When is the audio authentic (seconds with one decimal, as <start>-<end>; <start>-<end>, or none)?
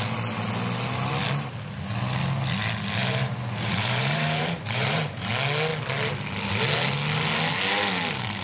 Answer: 0.0-3.0; 5.3-8.4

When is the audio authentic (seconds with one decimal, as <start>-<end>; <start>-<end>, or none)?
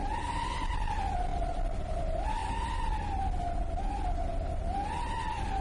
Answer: 0.0-1.3; 2.0-5.6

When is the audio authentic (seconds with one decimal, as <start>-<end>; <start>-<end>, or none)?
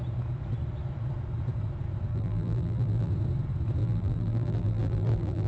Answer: 0.0-2.1; 3.1-3.8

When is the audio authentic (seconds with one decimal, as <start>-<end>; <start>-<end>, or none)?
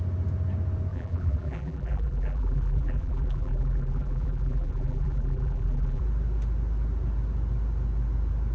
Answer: 0.0-0.9; 6.0-8.5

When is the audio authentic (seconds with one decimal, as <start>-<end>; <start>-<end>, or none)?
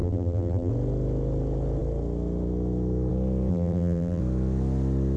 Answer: 0.7-3.5; 4.2-5.2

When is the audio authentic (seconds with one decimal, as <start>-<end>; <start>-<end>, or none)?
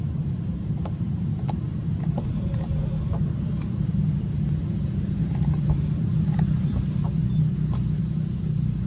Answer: 7.2-8.0